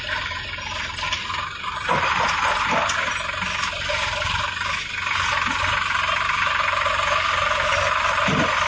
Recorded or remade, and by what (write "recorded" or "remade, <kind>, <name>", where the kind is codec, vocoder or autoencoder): recorded